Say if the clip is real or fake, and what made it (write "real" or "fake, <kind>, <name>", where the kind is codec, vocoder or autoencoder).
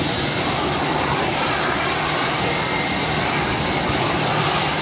real